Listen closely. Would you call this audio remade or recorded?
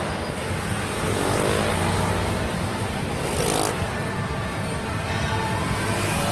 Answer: recorded